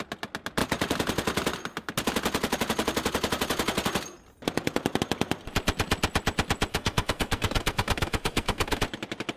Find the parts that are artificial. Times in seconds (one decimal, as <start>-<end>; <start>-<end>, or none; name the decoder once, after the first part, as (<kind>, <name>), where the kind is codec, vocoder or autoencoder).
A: 6.7-8.8 (codec, SNAC)